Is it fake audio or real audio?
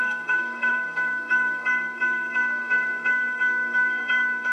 fake